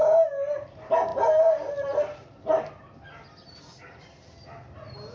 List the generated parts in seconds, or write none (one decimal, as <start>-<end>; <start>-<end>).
none